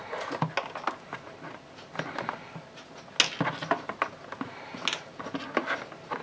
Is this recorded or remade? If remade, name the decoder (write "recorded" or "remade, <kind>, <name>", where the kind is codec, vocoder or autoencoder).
recorded